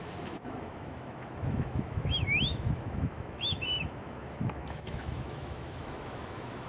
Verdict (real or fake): fake